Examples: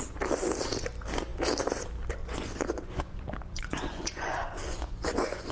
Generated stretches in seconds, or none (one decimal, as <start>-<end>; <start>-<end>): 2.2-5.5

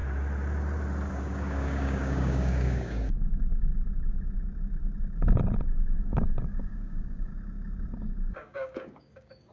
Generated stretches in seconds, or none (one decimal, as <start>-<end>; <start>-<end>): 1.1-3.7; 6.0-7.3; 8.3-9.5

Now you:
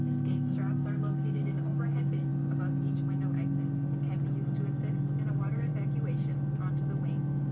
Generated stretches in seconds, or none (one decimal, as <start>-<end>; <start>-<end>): 0.0-2.3; 5.3-5.7